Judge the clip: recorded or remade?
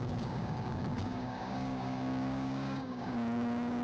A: remade